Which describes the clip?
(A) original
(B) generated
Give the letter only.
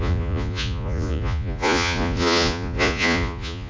B